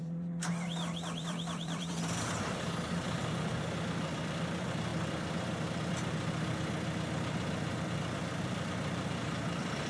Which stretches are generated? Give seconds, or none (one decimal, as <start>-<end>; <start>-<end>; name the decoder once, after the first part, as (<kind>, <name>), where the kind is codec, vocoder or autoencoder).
0.0-4.9 (vocoder, BigVGAN v2); 7.7-9.9